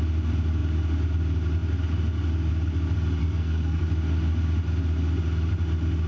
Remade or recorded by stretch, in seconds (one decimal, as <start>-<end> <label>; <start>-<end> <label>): 0.0-3.2 recorded; 3.2-3.8 remade; 3.8-6.1 recorded